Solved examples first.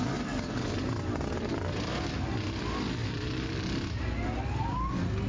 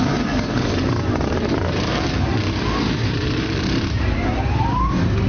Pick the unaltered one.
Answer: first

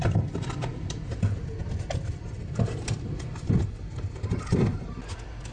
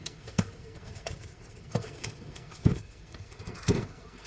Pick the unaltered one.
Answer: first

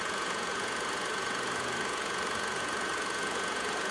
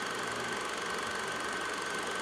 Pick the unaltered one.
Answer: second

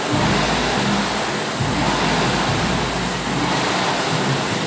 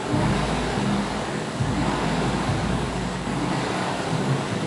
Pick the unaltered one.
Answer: first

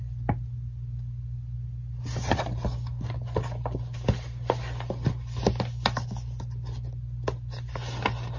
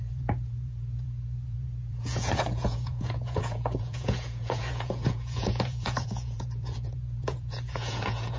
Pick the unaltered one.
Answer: first